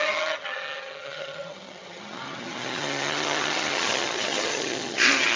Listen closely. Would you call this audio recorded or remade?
remade